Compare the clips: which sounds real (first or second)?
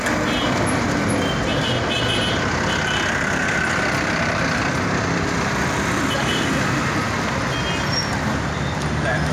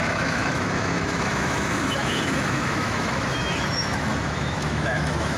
first